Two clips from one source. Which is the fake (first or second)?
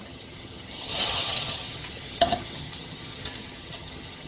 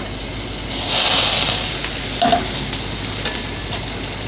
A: first